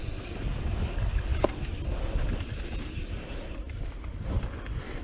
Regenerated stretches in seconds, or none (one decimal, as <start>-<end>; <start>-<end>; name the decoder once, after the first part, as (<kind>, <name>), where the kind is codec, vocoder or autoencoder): none

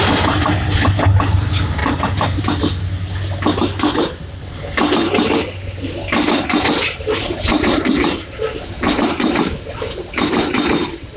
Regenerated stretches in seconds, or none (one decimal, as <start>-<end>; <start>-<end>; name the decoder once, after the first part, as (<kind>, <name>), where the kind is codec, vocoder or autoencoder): 1.8-2.4 (vocoder, BigVGAN v2); 7.2-10.5

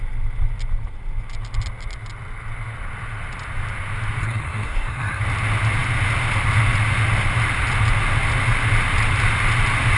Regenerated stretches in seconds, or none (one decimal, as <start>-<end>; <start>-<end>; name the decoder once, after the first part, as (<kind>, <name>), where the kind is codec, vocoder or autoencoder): 4.2-5.2 (codec, SNAC)

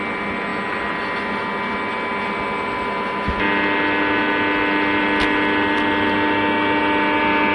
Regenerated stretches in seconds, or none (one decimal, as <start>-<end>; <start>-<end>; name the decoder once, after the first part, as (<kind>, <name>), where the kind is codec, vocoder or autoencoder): none

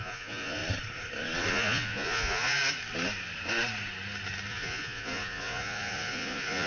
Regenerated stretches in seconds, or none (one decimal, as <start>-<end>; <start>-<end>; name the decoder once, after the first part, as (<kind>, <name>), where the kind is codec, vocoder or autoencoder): 0.0-0.6 (vocoder, Vocos); 1.5-2.6; 4.5-6.7

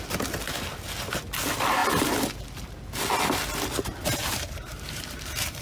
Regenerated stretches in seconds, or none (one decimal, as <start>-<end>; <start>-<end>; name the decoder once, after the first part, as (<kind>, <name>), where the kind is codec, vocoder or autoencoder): 4.2-5.6 (vocoder, BigVGAN v2)